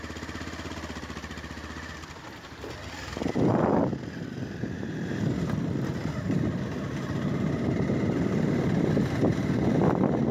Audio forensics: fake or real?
real